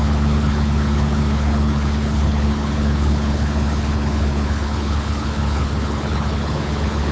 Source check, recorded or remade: remade